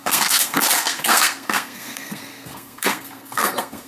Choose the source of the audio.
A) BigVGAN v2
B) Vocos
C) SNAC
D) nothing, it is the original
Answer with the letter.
C